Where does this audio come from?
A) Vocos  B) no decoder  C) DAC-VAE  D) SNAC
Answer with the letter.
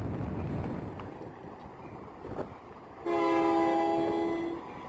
B